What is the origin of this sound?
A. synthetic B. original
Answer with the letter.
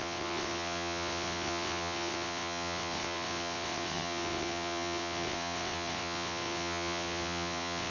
A